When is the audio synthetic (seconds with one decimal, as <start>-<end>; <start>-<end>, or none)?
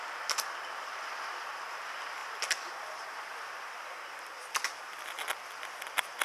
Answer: none